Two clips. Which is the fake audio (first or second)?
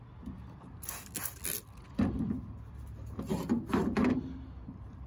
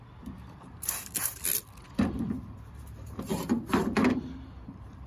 second